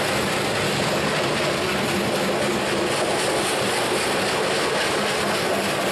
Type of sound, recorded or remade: recorded